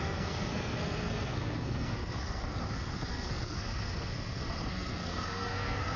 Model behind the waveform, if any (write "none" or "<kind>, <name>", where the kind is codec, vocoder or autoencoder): codec, SNAC